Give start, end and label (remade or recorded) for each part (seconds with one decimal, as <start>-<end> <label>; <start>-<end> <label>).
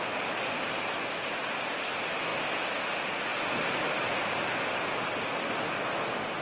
0.0-6.4 recorded